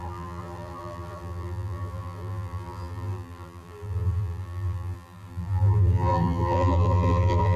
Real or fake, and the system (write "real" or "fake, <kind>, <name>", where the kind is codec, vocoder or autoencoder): fake, vocoder, BigVGAN v2